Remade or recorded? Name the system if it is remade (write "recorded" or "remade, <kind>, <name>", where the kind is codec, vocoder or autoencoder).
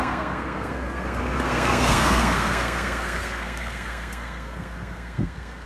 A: remade, codec, SNAC